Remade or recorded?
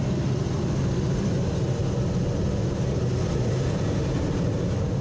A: recorded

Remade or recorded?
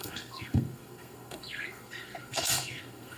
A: remade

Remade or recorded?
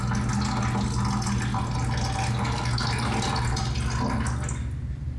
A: recorded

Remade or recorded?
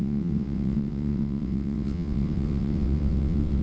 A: remade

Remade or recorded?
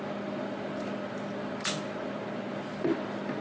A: recorded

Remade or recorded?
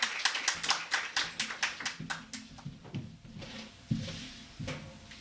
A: recorded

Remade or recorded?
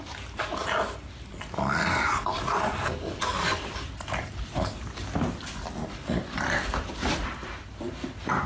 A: recorded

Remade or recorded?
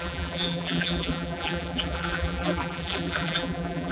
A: remade